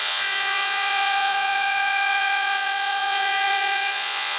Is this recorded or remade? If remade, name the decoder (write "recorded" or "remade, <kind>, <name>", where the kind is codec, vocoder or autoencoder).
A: remade, vocoder, Vocos